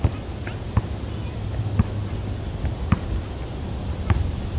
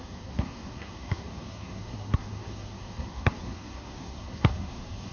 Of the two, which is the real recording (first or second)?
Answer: first